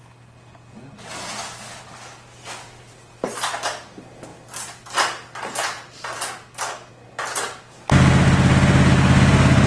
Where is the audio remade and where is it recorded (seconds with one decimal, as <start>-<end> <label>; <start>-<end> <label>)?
0.0-9.7 recorded